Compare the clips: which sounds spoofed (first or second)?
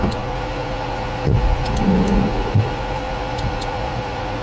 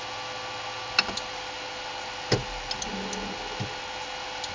first